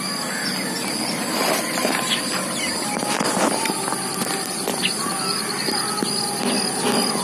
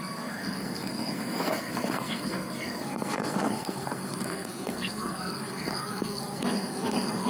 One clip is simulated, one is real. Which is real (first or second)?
first